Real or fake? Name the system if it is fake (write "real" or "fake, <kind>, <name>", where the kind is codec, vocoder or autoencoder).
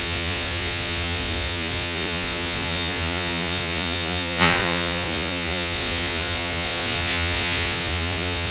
fake, vocoder, Vocos